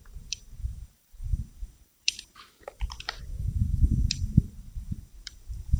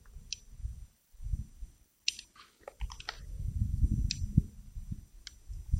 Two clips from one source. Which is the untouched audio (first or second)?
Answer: second